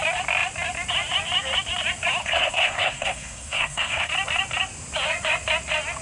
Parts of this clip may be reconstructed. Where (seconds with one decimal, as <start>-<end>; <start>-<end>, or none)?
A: 2.2-4.1